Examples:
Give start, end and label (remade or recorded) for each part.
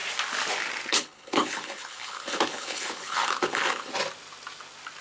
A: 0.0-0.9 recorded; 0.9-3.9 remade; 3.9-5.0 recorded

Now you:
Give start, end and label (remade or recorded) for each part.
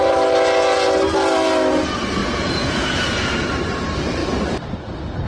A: 0.0-2.2 recorded; 2.2-3.3 remade; 3.3-5.3 recorded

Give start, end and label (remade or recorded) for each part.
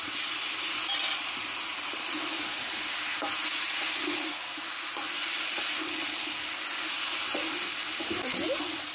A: 0.0-8.9 recorded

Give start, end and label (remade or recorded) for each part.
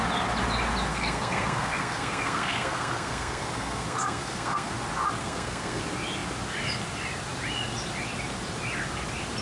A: 0.0-0.9 recorded; 0.9-4.7 remade; 4.7-5.2 recorded; 5.2-5.8 remade; 5.8-9.4 recorded